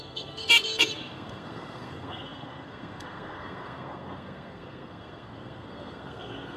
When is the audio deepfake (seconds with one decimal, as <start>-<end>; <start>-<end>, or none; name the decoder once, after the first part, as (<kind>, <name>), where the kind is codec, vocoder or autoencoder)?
0.0-6.6 (codec, SNAC)